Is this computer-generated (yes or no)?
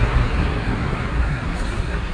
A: yes